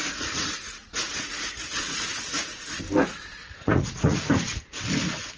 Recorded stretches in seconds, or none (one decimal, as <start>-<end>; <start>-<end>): 2.8-3.3; 4.3-5.4